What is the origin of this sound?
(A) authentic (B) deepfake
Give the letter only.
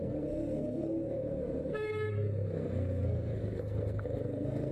B